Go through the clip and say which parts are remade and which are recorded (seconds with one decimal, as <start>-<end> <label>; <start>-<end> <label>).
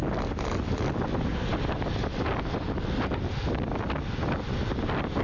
0.0-5.2 recorded